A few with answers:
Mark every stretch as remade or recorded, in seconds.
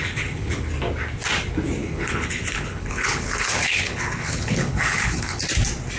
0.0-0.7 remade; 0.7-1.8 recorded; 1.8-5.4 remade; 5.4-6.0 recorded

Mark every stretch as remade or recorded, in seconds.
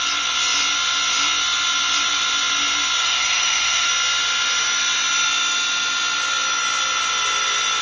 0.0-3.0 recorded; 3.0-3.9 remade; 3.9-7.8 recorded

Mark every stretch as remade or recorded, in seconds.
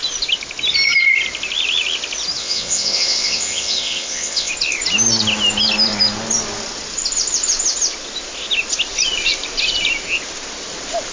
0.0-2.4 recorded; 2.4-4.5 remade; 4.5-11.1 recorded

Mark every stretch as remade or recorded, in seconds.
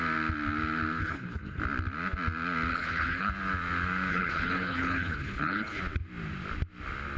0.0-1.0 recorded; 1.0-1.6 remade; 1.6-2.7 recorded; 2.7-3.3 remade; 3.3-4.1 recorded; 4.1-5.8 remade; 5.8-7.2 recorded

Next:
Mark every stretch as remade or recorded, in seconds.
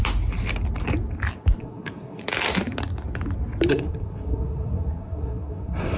0.0-1.6 recorded; 1.6-2.2 remade; 2.2-3.7 recorded; 3.7-6.0 remade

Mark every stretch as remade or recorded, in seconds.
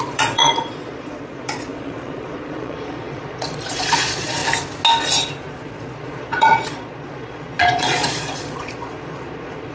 0.0-4.4 remade; 4.4-5.5 recorded; 5.5-9.7 remade